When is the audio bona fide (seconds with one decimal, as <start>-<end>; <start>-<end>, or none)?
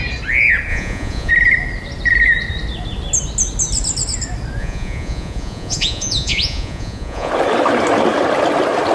0.0-0.7; 1.3-4.6; 7.3-8.9